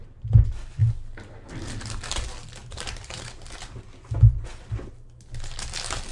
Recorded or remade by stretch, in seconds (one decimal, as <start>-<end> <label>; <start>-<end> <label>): 0.0-2.6 recorded; 2.6-3.3 remade; 3.3-6.1 recorded